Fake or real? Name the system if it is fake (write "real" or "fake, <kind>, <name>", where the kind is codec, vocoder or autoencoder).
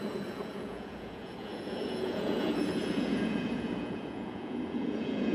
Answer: fake, vocoder, Vocos